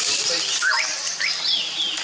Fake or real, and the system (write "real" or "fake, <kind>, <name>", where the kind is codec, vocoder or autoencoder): fake, vocoder, BigVGAN v2